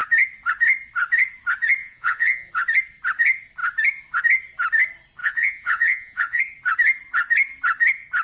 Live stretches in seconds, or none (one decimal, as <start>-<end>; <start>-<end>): 0.0-1.8; 2.5-5.2; 6.4-8.2